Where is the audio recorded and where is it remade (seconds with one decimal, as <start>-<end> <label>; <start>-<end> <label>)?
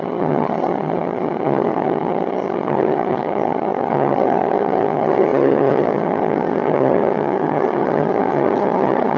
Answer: 0.0-9.2 remade